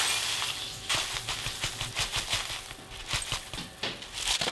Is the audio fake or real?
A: real